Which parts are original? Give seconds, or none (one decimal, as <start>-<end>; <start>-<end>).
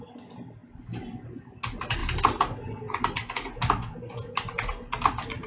0.0-5.5